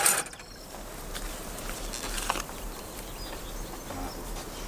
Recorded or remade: recorded